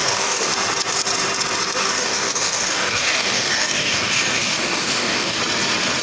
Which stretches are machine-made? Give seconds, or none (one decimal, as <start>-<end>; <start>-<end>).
0.0-0.5; 1.8-5.4